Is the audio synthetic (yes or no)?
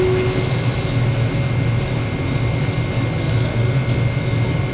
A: no